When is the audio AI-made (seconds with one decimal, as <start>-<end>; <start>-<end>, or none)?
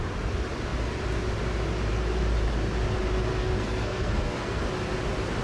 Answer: 3.3-4.6